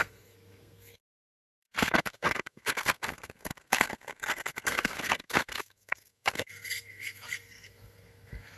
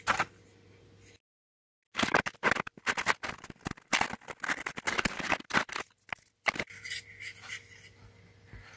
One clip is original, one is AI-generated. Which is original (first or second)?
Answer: second